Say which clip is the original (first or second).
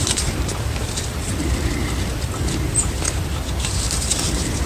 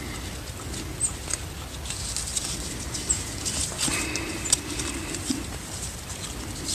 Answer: second